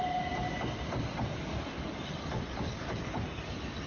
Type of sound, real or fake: real